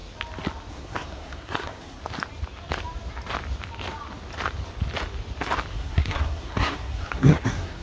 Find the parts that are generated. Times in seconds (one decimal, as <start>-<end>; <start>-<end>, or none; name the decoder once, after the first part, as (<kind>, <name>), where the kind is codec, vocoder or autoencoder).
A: 0.7-2.0 (codec, SNAC); 5.7-7.8

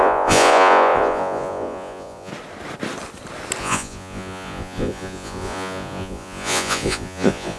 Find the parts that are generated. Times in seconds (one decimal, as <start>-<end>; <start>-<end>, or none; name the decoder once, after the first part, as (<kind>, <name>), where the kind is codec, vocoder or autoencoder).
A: 0.0-2.3 (vocoder, Vocos); 3.6-7.6

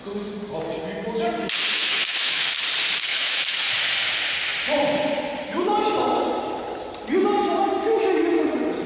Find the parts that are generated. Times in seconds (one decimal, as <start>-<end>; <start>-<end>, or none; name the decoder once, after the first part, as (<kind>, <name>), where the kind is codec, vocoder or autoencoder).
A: 1.7-2.6 (autoencoder, DAC-VAE); 3.1-3.7